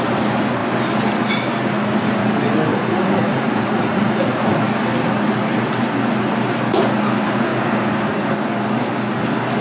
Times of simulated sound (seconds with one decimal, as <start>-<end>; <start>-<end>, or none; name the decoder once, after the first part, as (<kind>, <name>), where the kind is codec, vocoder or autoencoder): 2.7-4.6 (vocoder, Vocos)